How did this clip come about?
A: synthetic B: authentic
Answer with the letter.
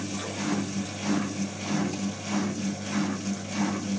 B